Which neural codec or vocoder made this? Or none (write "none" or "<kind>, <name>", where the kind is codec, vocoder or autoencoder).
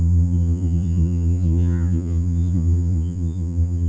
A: vocoder, Vocos